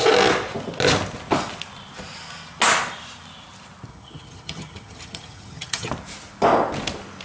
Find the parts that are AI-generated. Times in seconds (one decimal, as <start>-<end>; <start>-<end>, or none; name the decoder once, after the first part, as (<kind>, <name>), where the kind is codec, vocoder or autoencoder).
3.9-5.9 (vocoder, HiFi-GAN)